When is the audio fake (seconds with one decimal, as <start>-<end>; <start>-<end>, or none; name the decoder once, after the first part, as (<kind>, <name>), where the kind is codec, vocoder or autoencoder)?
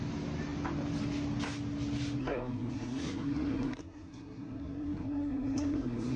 2.2-6.2 (codec, SNAC)